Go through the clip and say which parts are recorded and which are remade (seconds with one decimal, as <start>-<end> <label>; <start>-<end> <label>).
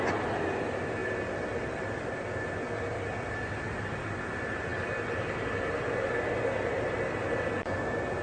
0.0-8.2 recorded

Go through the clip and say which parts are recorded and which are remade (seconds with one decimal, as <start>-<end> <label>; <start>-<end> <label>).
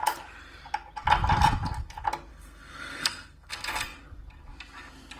0.0-2.3 recorded; 2.3-3.5 remade; 3.5-5.2 recorded